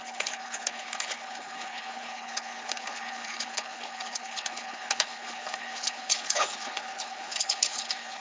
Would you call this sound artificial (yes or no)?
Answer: yes